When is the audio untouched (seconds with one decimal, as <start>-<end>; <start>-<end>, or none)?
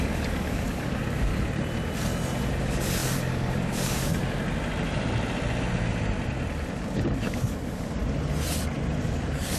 1.3-2.6; 4.1-6.7; 8.0-9.0